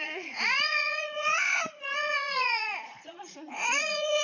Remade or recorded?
remade